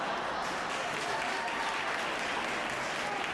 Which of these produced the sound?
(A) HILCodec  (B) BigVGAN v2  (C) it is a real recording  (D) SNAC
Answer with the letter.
C